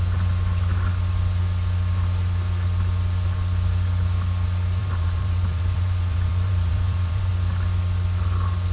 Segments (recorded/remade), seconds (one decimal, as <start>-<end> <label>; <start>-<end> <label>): 0.0-4.8 recorded; 4.8-7.3 remade; 7.3-8.7 recorded